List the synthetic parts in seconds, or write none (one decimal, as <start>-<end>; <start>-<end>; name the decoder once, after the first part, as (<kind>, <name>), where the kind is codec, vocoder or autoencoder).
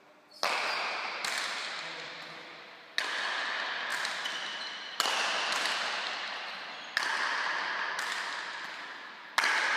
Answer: none